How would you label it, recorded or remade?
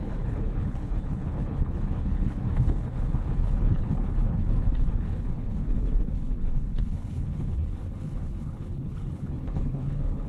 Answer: remade